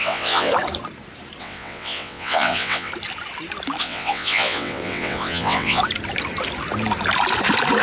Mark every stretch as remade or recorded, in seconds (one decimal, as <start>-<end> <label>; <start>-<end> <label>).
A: 0.0-0.5 remade; 0.5-1.4 recorded; 1.4-2.9 remade; 2.9-3.8 recorded; 3.8-5.8 remade; 5.8-7.8 recorded